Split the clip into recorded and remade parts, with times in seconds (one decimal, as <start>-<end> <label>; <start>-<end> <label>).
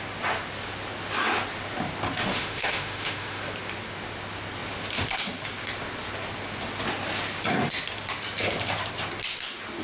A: 0.0-2.2 recorded; 2.2-3.4 remade; 3.4-9.8 recorded